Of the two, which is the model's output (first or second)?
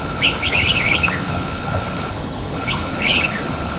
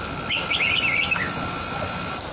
first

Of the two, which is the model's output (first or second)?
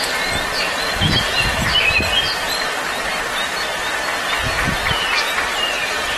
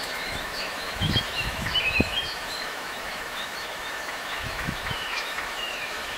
second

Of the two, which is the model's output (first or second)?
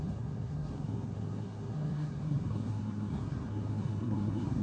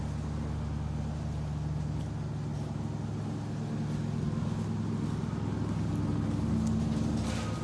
first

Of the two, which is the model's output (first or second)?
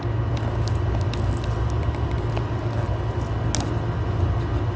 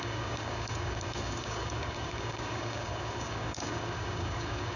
second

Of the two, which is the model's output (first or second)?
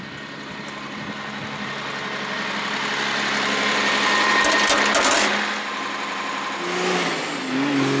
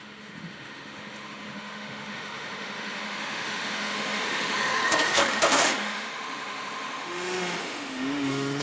second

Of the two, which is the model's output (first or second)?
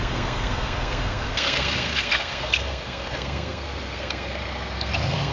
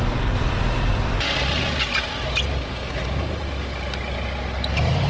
first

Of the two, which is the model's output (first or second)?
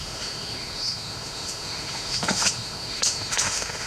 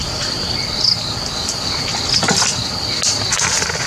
first